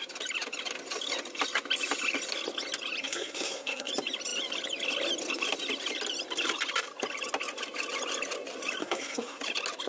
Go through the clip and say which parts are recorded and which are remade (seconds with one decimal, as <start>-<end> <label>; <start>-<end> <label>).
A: 0.0-3.0 recorded; 3.0-3.9 remade; 3.9-8.8 recorded; 8.8-9.4 remade; 9.4-9.9 recorded